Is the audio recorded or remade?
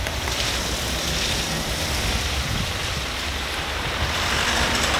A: remade